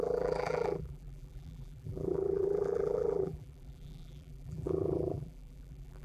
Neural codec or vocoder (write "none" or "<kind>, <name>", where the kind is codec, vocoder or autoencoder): vocoder, BigVGAN v2